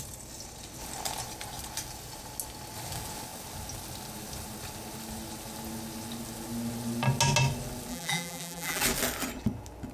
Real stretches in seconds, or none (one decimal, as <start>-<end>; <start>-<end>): 0.0-7.9; 8.8-9.9